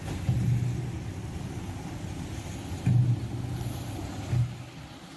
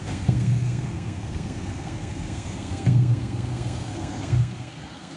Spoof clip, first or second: second